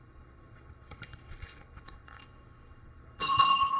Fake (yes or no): yes